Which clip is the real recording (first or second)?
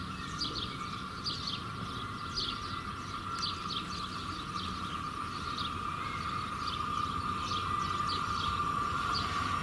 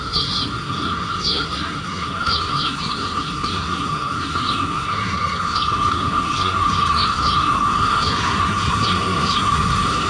first